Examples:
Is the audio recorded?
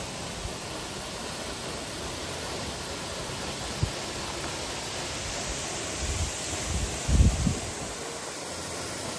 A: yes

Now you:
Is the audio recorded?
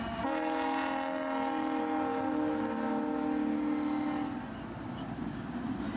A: yes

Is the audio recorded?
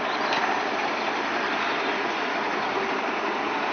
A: no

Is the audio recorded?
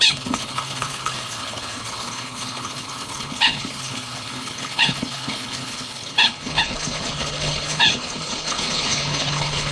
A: no